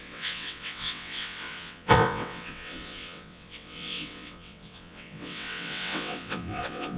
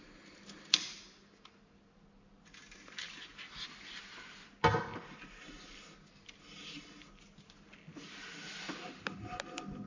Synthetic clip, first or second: first